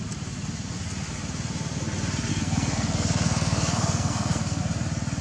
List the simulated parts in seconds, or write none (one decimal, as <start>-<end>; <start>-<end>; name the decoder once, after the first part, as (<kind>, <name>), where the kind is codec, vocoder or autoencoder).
2.3-4.6 (codec, SNAC)

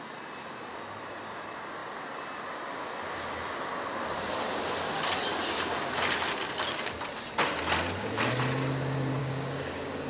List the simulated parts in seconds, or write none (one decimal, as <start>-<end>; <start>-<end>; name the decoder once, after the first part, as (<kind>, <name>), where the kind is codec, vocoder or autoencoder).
9.2-10.1 (codec, DAC)

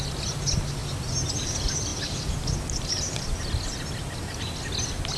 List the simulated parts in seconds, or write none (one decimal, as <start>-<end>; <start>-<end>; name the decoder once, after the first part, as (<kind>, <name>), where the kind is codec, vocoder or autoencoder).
none

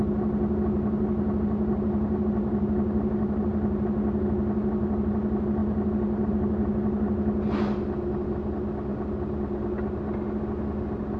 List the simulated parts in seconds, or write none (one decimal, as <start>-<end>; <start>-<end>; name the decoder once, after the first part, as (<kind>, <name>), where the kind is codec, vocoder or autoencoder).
none

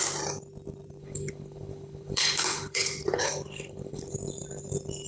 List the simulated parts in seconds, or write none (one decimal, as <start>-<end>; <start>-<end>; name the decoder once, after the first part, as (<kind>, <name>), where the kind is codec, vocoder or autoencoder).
1.0-4.1 (codec, HILCodec)

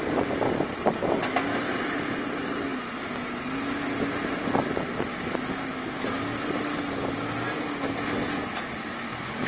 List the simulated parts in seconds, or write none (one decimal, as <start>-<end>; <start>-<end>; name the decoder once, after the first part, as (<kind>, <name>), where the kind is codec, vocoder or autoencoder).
none

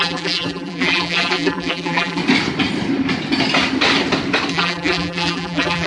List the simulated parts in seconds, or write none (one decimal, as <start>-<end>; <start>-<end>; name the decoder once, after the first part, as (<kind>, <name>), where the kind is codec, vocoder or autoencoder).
0.0-2.2 (vocoder, BigVGAN v2); 4.5-5.9